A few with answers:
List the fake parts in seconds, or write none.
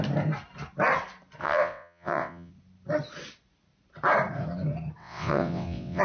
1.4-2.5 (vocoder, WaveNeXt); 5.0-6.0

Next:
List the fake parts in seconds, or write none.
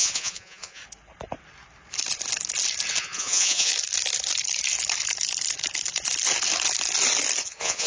0.0-0.8 (vocoder, Vocos); 3.0-3.7; 7.4-7.9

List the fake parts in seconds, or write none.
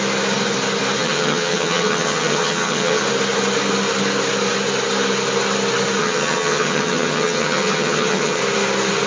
1.0-3.0 (vocoder, HiFi-GAN); 6.0-8.4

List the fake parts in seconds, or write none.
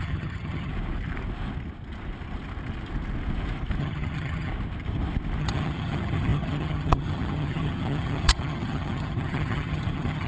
0.0-0.7 (vocoder, HiFi-GAN); 3.8-4.5; 5.4-10.3